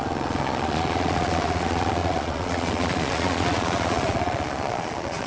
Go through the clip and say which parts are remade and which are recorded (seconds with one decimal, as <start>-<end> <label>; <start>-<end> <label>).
0.0-5.3 remade